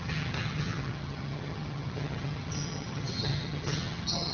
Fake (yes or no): yes